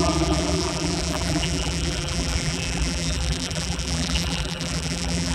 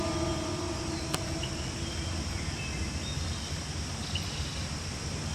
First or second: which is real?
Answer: second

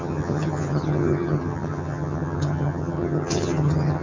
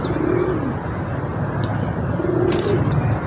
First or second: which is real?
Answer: second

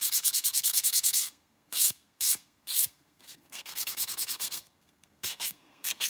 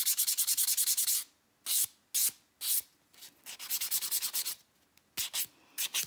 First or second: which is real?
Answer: second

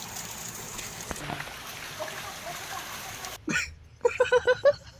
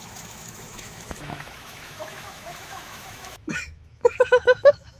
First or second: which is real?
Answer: first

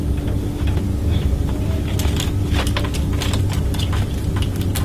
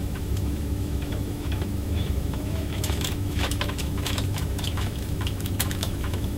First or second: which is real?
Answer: first